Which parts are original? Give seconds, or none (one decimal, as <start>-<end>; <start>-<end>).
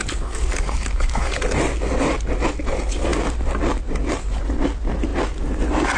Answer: 1.4-6.0